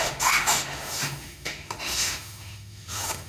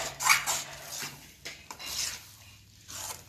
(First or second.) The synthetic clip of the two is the first